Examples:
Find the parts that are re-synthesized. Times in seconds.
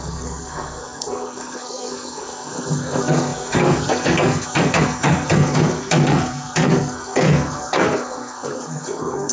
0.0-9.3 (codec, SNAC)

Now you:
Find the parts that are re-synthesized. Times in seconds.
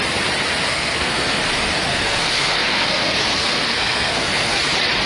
0.7-1.4 (codec, SNAC); 1.9-4.6